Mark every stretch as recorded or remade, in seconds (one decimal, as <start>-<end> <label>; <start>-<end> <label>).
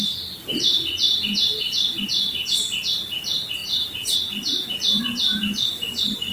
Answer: 0.0-6.3 recorded